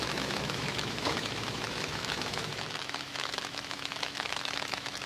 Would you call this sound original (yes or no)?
no